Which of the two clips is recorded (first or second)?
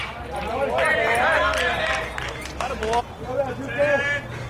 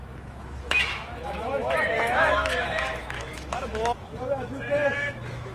first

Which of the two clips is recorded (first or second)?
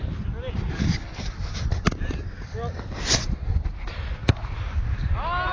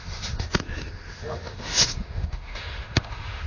first